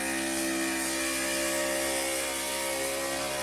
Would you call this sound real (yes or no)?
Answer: yes